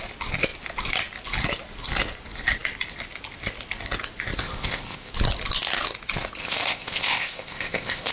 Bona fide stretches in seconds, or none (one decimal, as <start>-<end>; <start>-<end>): 0.0-4.4; 5.1-6.4